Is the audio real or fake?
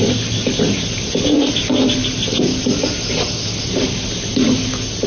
real